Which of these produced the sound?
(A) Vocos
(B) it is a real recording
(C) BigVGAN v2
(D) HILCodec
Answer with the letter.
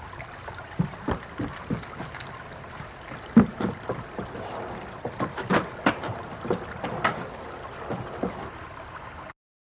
B